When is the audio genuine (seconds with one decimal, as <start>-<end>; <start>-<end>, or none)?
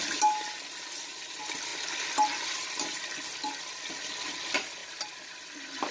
0.0-5.9